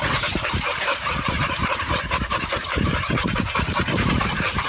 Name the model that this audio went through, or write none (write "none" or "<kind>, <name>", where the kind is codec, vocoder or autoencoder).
vocoder, BigVGAN v2